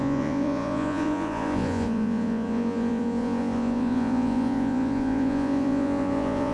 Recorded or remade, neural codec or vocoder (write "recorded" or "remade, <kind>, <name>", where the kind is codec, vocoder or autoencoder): remade, vocoder, Vocos